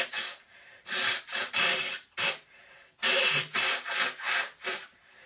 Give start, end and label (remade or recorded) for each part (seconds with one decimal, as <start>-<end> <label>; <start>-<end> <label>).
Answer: 0.0-3.6 remade; 3.6-4.4 recorded; 4.4-5.3 remade